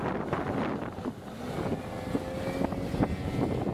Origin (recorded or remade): recorded